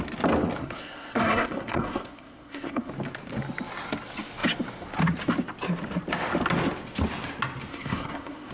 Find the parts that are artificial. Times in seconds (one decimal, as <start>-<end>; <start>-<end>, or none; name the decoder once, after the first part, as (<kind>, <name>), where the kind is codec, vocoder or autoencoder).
0.6-2.9 (codec, SNAC); 7.7-8.5